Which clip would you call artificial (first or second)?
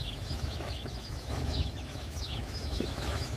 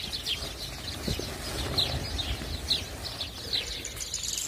first